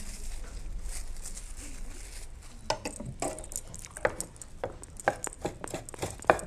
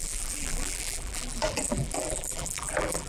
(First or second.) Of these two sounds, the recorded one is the first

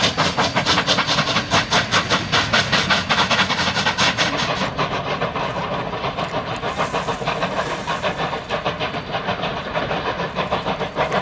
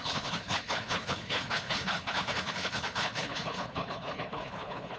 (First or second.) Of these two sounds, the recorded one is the first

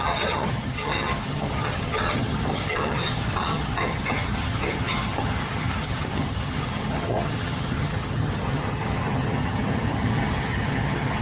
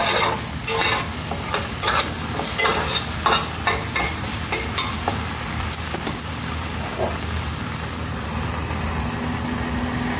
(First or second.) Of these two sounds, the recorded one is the second